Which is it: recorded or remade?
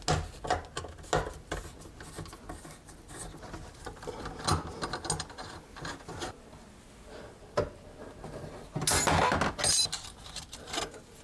recorded